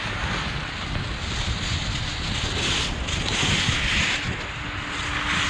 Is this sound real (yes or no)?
yes